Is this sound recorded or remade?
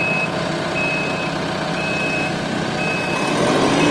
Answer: recorded